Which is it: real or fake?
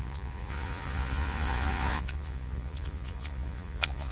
fake